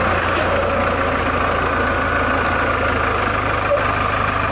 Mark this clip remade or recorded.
recorded